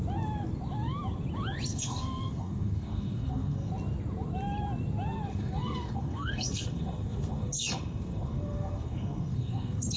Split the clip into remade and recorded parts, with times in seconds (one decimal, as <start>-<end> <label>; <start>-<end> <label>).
0.0-1.7 recorded; 1.7-3.7 remade; 3.7-5.3 recorded; 5.3-10.0 remade